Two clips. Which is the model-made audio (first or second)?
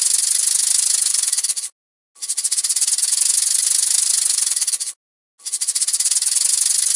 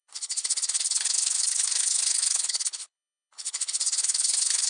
second